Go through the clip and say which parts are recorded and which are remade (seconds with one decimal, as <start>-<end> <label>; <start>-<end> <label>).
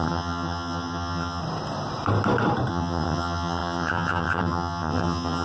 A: 0.0-1.4 remade; 1.4-2.7 recorded; 2.7-5.4 remade